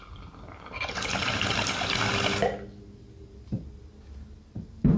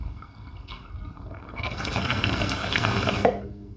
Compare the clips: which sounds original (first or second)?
first